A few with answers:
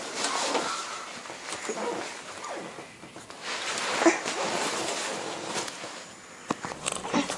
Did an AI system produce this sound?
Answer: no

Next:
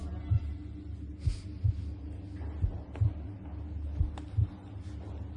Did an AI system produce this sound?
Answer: no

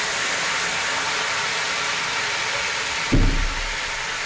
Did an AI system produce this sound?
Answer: no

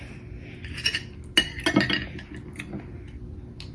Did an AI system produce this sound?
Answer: no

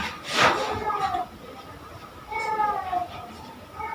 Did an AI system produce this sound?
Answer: no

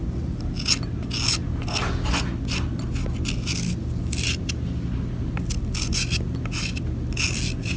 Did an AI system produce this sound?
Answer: no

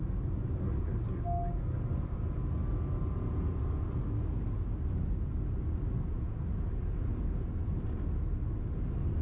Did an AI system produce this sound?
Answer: no